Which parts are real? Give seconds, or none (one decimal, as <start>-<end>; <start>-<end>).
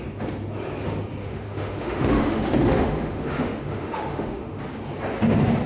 0.0-1.2; 4.6-5.7